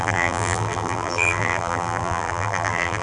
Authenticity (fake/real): fake